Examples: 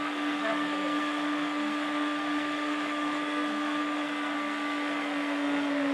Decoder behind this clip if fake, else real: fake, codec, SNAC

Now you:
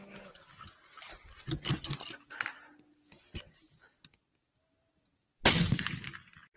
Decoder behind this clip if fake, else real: real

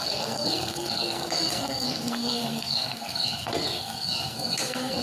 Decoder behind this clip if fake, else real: fake, codec, SNAC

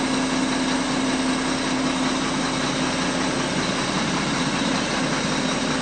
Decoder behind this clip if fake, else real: real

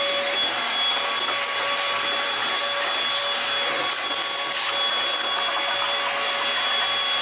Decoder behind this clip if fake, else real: real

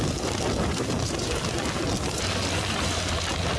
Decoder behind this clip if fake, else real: real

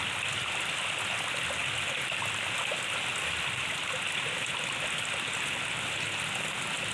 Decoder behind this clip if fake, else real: real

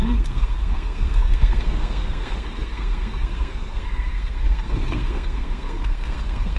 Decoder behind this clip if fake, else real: fake, codec, SNAC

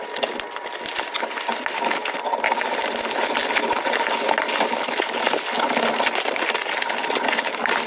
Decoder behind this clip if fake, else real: real